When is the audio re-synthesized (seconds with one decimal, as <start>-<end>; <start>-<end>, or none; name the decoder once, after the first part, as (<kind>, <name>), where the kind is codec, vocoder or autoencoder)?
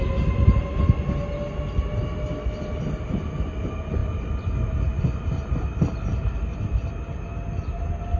none